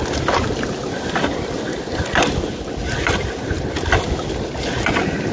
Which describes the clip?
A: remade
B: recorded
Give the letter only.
B